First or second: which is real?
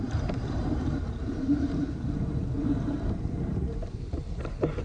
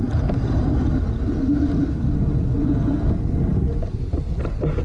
second